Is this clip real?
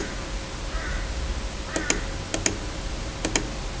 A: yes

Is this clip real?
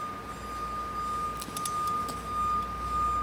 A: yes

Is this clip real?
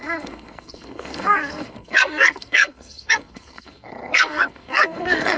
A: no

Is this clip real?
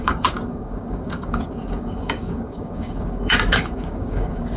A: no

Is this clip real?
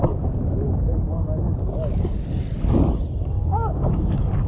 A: yes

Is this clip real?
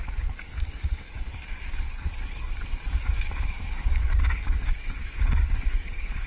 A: no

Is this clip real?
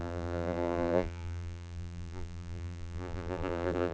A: no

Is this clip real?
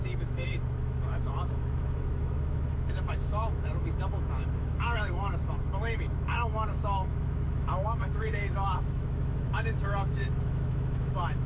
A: no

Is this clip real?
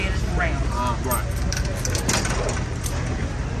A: yes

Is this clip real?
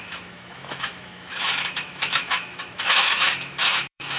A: no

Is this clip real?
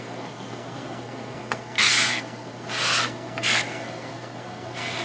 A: no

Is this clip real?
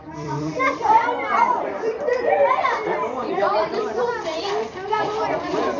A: no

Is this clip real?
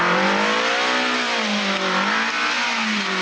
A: yes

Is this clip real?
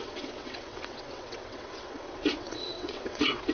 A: no